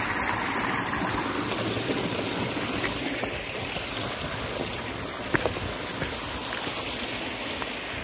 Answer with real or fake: real